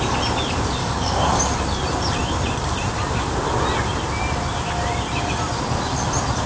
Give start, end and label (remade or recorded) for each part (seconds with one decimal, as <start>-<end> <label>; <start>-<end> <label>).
0.0-0.8 recorded; 0.8-1.5 remade; 1.5-6.5 recorded